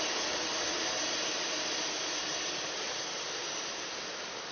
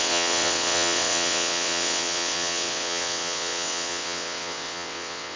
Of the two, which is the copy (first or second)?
second